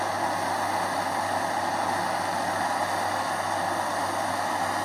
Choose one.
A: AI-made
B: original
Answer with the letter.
B